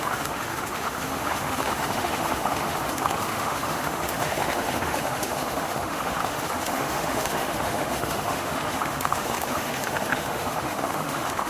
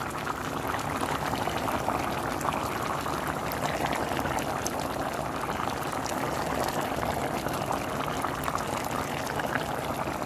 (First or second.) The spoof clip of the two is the first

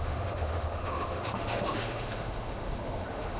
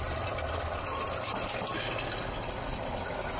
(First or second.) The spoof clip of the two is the first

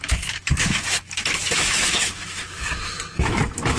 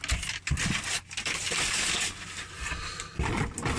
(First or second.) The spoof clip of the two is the first